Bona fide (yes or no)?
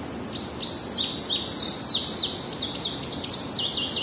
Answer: yes